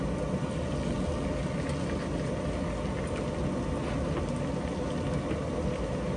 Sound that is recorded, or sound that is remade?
recorded